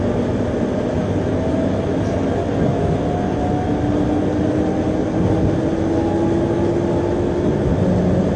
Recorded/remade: recorded